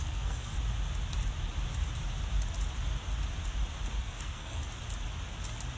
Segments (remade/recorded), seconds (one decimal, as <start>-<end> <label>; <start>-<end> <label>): 0.0-0.5 remade; 0.5-4.0 recorded; 4.0-4.6 remade; 4.6-5.8 recorded